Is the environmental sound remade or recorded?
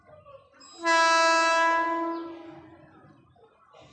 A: recorded